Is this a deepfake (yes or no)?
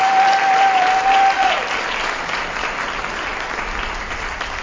yes